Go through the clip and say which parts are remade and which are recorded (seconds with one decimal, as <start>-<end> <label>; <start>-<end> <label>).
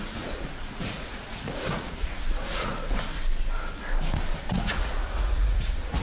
0.0-2.7 remade; 2.7-4.5 recorded; 4.5-6.0 remade